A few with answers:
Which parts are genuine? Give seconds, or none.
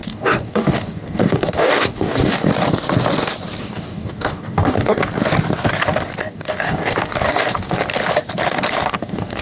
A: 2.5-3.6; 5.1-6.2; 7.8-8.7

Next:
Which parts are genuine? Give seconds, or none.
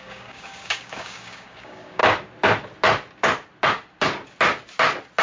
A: 2.0-5.2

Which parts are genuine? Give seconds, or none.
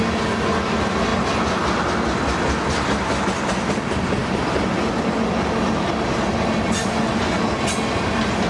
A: 0.0-8.5